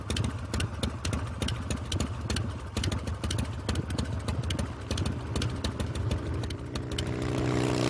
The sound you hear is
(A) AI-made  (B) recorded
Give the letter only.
B